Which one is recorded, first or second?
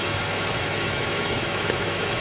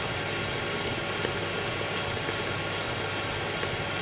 second